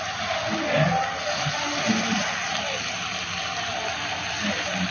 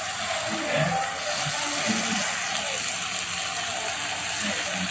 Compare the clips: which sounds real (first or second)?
second